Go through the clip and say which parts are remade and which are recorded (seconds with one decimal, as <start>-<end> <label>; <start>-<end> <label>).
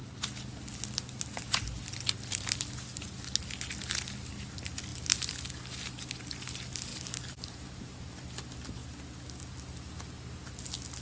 0.0-4.9 recorded; 4.9-5.5 remade; 5.5-6.9 recorded; 6.9-8.1 remade; 8.1-11.0 recorded